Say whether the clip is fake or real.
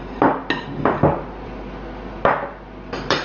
real